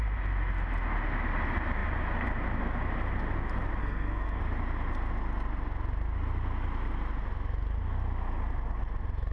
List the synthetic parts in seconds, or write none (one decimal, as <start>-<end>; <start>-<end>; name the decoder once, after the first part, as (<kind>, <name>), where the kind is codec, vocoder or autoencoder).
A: 3.8-4.4 (codec, SNAC)